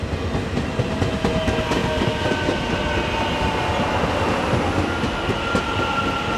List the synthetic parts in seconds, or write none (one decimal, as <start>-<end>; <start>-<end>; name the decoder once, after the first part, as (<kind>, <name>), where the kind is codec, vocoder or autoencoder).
none